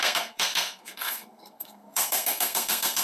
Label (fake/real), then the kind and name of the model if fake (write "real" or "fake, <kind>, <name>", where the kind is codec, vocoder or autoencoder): fake, codec, SNAC